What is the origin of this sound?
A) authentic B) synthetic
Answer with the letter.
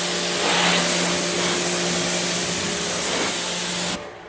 A